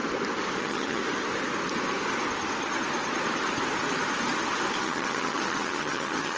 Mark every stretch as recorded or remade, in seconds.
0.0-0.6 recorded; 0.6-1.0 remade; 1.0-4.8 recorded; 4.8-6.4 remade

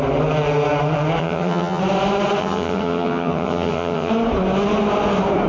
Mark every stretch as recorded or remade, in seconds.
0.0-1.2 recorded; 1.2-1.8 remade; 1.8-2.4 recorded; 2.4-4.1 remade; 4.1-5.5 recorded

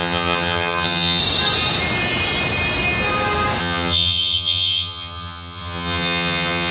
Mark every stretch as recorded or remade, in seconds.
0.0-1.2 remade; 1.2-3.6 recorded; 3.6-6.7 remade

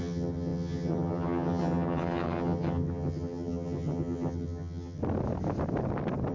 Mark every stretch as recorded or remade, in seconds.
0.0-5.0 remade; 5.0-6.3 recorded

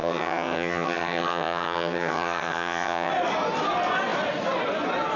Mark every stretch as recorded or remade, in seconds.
0.0-3.1 remade; 3.1-5.2 recorded

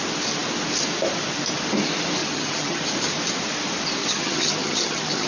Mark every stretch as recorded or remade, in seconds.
0.0-2.2 recorded; 2.2-2.8 remade; 2.8-4.0 recorded; 4.0-5.3 remade

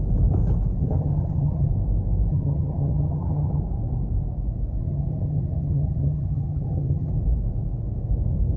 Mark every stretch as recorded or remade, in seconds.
0.0-0.8 recorded; 0.8-1.7 remade; 1.7-2.3 recorded; 2.3-3.6 remade; 3.6-4.8 recorded; 4.8-7.1 remade; 7.1-8.6 recorded

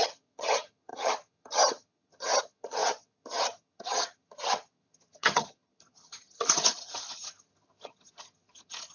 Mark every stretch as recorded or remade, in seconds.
0.0-8.9 remade